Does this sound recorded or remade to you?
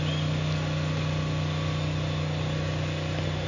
recorded